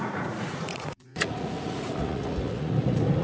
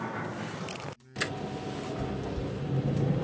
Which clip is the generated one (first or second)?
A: first